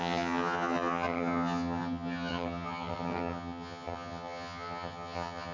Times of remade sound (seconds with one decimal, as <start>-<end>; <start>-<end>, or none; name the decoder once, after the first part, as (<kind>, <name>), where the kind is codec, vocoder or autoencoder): 0.0-5.5 (vocoder, HiFi-GAN)